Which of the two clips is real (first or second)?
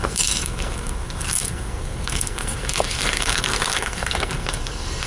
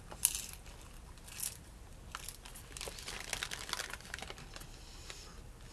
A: second